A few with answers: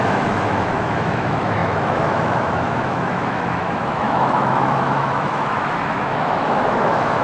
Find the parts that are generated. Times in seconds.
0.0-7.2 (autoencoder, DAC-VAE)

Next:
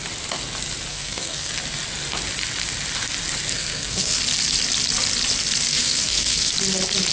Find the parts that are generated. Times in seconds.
0.9-1.5 (codec, SNAC); 3.5-4.2; 5.7-6.5

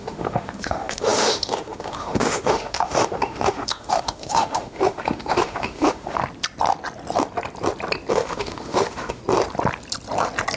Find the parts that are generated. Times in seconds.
0.0-6.2 (autoencoder, DAC-VAE); 8.1-9.2